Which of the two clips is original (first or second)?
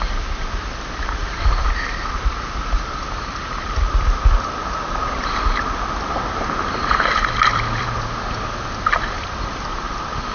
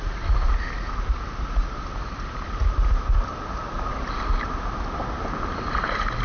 second